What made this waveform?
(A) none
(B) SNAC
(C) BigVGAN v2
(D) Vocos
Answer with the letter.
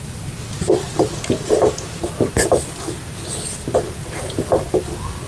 A